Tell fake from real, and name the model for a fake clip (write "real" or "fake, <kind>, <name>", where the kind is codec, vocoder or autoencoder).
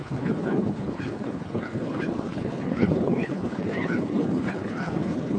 fake, codec, HILCodec